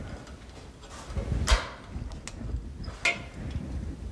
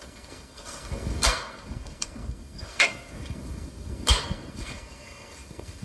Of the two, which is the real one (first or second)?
first